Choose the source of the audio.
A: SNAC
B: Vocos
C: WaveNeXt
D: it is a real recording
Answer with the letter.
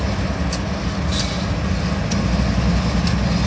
D